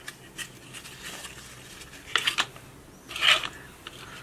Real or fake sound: real